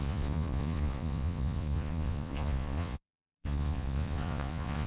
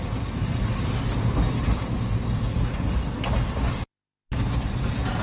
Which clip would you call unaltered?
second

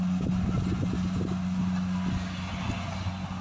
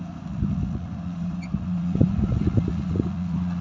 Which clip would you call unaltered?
first